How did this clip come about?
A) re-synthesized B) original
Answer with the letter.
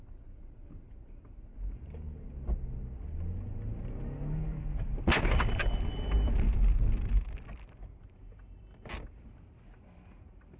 B